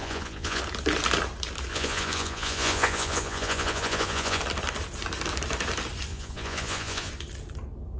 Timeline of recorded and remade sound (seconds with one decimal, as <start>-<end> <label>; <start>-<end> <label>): 0.0-0.6 remade; 0.6-1.7 recorded; 1.7-4.4 remade; 4.4-6.1 recorded; 6.1-7.1 remade; 7.1-8.0 recorded